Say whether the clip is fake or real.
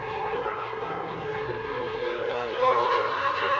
fake